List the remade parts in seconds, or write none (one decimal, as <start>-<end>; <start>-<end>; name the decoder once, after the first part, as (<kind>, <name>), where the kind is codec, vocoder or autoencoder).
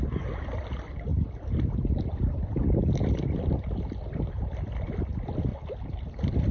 1.1-5.0 (vocoder, BigVGAN v2); 5.5-6.5